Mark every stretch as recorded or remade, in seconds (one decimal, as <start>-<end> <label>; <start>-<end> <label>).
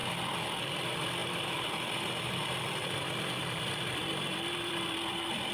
0.0-0.6 recorded; 0.6-5.5 remade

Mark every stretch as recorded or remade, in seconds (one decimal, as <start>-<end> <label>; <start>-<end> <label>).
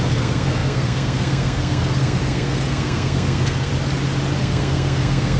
0.0-3.7 remade; 3.7-4.4 recorded; 4.4-5.4 remade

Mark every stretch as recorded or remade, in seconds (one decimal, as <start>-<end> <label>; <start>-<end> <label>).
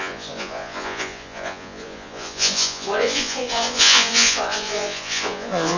0.0-5.8 remade